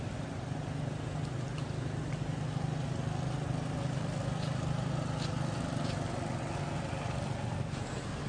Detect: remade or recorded recorded